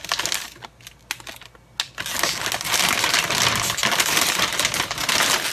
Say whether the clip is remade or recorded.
recorded